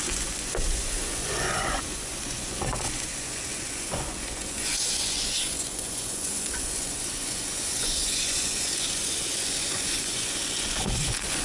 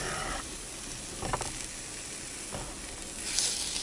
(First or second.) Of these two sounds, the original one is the second